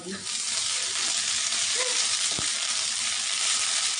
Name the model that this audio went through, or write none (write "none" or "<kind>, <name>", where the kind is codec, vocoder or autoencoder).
vocoder, BigVGAN v2